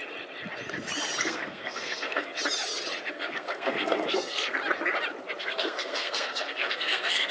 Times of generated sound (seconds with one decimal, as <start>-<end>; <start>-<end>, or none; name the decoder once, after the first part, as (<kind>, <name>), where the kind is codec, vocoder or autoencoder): 1.2-2.3 (codec, SNAC); 3.1-4.6; 5.4-7.3